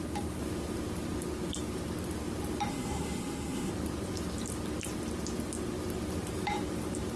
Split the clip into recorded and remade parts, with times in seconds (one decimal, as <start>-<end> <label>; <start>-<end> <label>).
0.0-2.7 recorded; 2.7-3.7 remade; 3.7-7.2 recorded